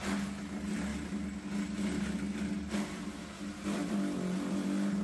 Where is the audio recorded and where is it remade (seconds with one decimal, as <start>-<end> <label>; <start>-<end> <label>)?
0.0-5.0 recorded